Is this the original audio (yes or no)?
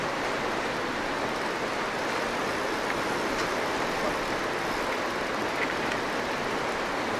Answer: yes